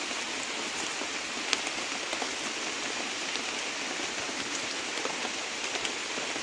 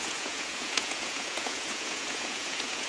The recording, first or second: first